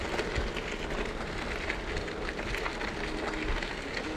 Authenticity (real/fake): real